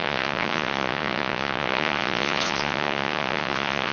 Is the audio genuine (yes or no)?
no